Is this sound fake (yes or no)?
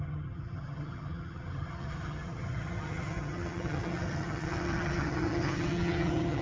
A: yes